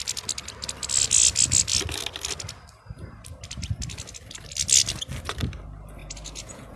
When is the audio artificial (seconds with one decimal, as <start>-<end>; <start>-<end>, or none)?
6.0-6.8